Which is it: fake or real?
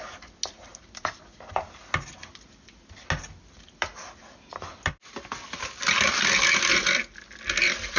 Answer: real